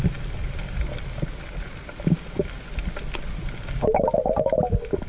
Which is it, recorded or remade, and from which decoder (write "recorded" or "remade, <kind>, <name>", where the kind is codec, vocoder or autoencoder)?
recorded